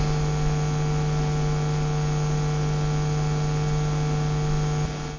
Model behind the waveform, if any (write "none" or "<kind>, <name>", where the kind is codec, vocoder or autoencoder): none